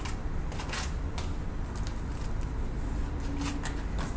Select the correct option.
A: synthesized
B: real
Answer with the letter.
B